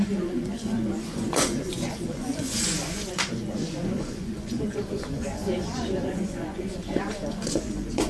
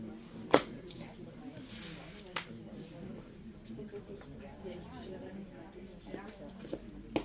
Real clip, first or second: second